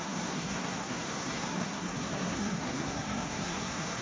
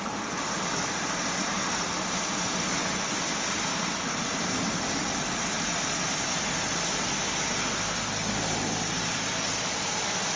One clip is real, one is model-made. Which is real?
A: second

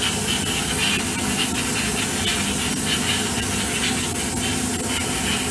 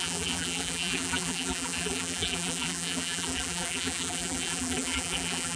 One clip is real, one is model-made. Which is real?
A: first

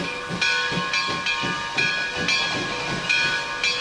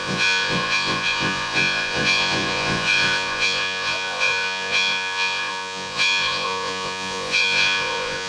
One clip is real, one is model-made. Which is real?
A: first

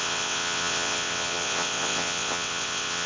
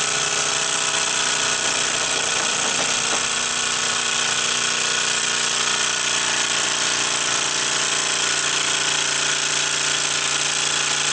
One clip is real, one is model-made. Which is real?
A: second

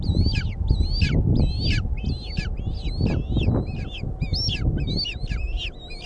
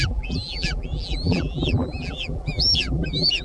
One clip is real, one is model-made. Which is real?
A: first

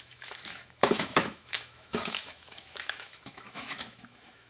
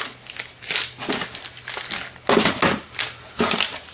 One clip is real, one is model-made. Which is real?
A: second